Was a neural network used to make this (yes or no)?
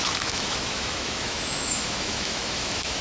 yes